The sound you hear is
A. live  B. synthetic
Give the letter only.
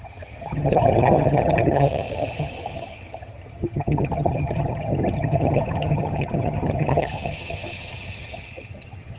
B